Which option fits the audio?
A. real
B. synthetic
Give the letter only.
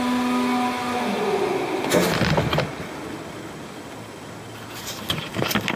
A